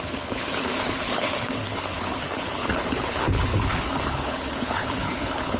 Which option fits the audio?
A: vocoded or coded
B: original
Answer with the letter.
A